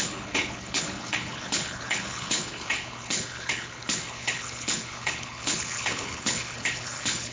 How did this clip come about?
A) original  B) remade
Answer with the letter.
B